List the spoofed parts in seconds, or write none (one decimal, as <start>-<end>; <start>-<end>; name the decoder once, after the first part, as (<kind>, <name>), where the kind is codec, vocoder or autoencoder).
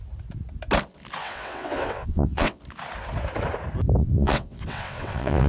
1.2-2.6 (vocoder, WaveNeXt); 4.0-5.5